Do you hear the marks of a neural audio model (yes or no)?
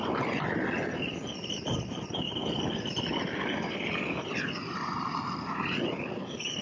yes